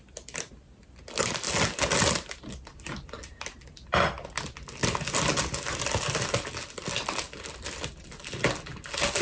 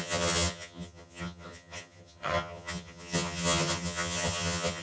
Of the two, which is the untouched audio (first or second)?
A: first